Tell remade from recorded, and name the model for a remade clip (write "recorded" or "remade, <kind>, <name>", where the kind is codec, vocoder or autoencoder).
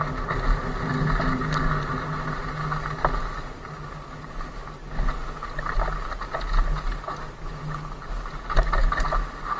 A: recorded